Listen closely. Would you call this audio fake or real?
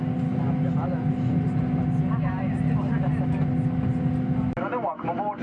real